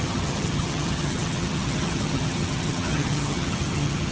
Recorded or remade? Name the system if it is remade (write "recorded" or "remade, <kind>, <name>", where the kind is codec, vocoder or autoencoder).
remade, vocoder, HiFi-GAN